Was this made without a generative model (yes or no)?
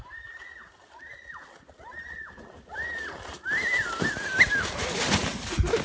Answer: yes